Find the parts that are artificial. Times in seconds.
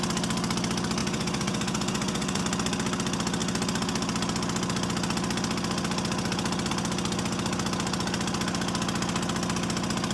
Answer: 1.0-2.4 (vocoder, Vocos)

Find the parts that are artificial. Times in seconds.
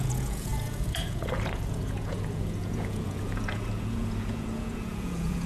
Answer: 0.0-5.5 (vocoder, Vocos)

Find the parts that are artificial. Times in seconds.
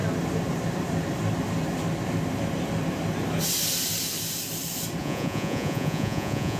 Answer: 5.0-6.6 (vocoder, Vocos)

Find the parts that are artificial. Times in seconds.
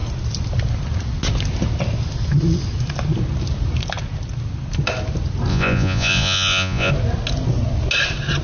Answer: 5.5-6.9 (vocoder, Vocos)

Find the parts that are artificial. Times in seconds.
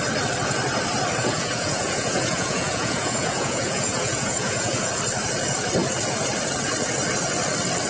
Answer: 1.2-4.9 (vocoder, Vocos)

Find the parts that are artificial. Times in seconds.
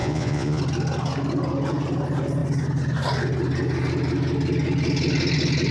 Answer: 0.0-0.6 (vocoder, Vocos)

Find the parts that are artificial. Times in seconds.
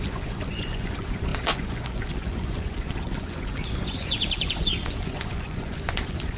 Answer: 0.0-6.4 (vocoder, Vocos)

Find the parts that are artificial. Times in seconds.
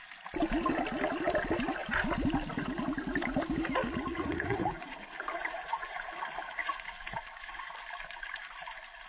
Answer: 4.1-6.1 (vocoder, Vocos); 6.6-7.7